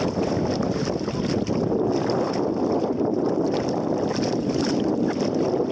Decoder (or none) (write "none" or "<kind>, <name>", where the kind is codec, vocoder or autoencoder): none